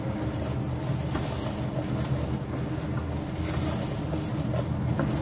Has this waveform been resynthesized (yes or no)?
no